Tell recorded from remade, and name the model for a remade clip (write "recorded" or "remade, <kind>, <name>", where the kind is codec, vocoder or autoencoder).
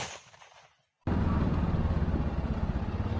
recorded